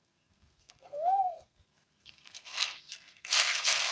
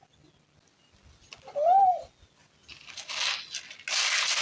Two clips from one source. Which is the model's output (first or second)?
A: first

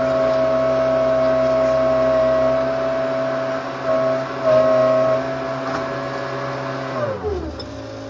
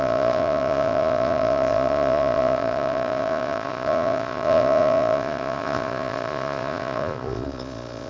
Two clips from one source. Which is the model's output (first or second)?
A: second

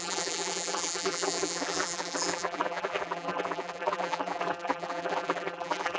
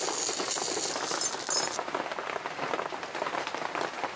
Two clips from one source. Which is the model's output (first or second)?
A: first